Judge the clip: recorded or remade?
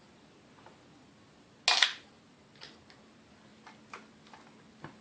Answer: recorded